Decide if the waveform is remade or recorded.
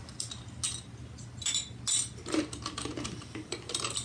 recorded